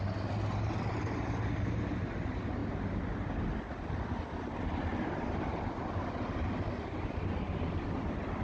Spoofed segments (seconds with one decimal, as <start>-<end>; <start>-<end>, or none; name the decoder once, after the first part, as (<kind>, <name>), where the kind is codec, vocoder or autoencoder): 4.9-5.5 (vocoder, BigVGAN v2)